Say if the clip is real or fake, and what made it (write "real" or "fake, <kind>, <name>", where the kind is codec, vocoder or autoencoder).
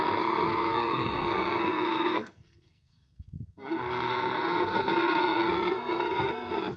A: fake, codec, SNAC